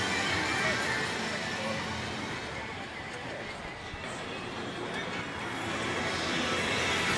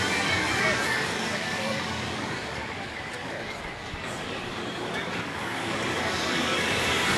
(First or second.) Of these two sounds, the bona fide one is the first